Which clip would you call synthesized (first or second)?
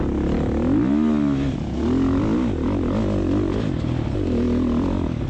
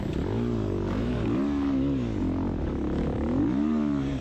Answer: second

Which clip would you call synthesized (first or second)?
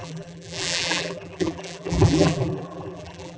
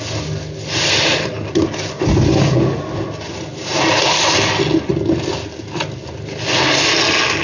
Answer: first